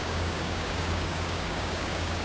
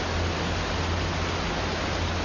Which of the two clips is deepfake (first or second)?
first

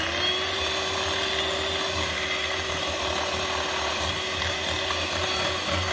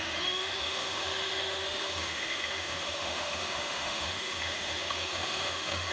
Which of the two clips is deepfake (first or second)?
second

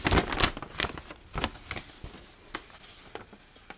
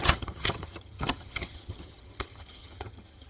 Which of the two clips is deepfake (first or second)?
second